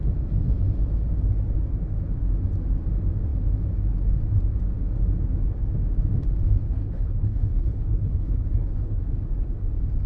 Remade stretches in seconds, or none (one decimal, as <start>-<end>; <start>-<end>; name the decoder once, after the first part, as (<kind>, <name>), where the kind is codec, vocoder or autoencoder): 6.6-9.0 (codec, HILCodec)